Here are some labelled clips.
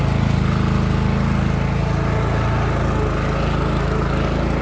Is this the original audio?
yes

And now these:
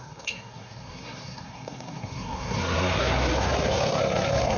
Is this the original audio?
no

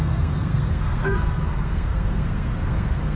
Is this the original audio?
no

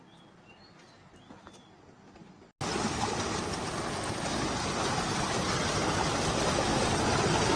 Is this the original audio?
yes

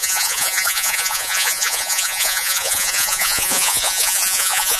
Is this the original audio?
no